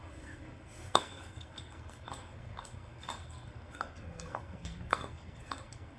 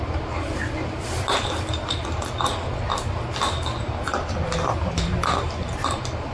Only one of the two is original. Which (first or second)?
second